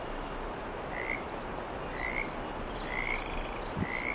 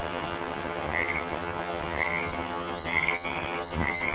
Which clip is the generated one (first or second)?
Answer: second